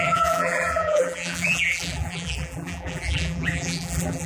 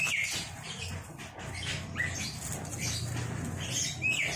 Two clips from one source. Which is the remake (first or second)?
first